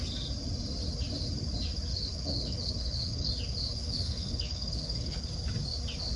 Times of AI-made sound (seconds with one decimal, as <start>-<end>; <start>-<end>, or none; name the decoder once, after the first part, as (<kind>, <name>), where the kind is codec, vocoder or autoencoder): 1.9-3.3 (codec, HILCodec); 3.8-5.3